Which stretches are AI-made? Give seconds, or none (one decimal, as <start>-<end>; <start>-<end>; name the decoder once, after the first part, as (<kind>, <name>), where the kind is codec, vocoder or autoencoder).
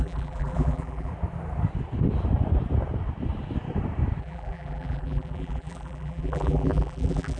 0.0-1.1 (vocoder, BigVGAN v2); 4.2-7.4